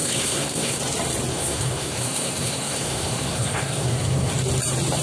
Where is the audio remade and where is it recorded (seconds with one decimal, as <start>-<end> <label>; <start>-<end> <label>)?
0.0-0.8 remade; 0.8-1.3 recorded; 1.3-4.3 remade; 4.3-5.0 recorded